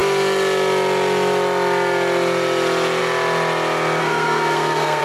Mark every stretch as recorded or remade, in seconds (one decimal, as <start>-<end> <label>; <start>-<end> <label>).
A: 0.0-4.0 recorded; 4.0-5.0 remade